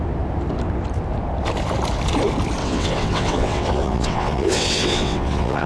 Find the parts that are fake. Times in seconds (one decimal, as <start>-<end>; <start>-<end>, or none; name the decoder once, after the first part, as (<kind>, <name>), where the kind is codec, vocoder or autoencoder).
2.6-5.7 (vocoder, WaveNeXt)